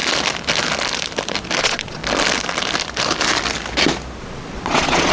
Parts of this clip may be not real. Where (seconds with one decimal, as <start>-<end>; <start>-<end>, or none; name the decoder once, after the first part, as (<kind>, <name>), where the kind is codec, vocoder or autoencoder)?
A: 1.6-2.0 (vocoder, Vocos); 4.2-5.1

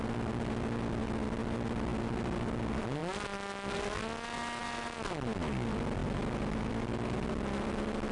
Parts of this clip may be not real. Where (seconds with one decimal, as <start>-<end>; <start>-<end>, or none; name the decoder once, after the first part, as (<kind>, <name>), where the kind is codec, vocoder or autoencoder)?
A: none

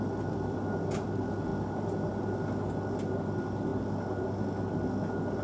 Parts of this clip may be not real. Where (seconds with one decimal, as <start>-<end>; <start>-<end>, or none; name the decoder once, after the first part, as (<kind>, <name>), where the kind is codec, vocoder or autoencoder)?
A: none

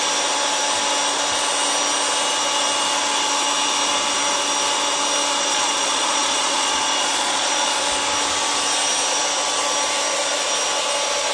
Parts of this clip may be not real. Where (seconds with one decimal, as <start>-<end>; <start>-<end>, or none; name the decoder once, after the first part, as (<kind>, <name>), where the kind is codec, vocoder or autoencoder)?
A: 5.5-7.8 (vocoder, Vocos)

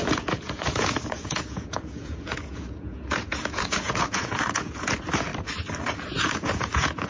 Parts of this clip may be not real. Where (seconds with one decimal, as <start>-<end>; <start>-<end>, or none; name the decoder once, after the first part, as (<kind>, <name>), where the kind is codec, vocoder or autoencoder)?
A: 0.0-5.3 (vocoder, Vocos); 6.0-7.1

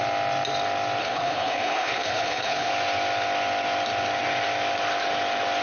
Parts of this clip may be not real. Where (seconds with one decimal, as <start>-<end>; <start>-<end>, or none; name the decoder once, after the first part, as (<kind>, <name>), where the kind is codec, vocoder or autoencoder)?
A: 1.0-2.7 (codec, HILCodec)